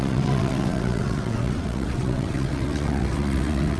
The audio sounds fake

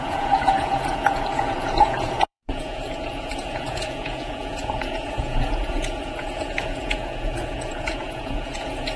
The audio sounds fake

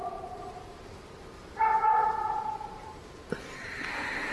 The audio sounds real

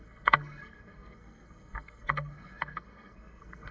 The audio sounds fake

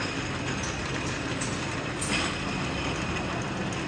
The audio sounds real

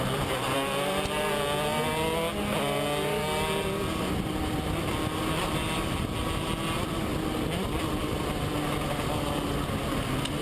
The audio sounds real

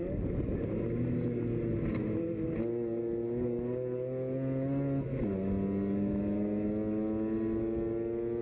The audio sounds real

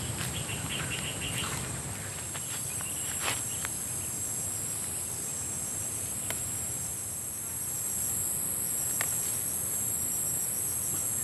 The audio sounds real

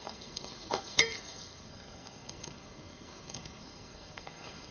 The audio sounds fake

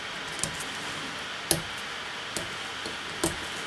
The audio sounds real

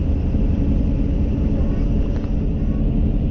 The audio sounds real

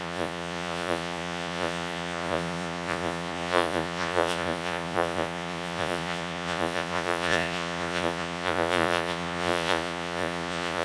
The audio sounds fake